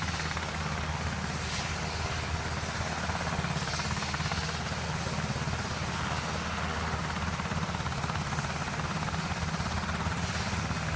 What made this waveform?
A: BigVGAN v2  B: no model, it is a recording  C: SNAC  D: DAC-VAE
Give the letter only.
B